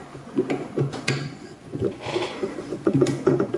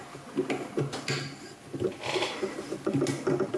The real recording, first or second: second